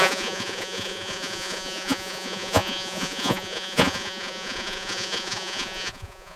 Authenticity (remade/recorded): remade